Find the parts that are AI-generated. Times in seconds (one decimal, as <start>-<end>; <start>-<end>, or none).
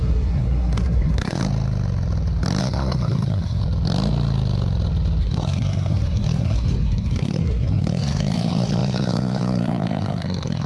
0.0-1.4; 2.6-3.6; 5.2-10.7